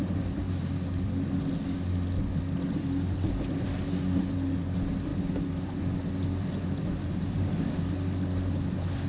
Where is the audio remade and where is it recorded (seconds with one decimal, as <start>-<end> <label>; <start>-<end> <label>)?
0.0-9.1 recorded